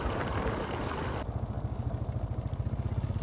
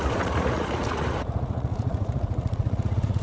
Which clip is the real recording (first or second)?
first